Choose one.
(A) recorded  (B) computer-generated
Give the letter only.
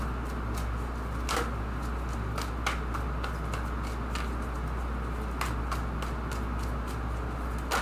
A